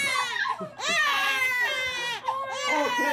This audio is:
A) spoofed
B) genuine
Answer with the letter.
B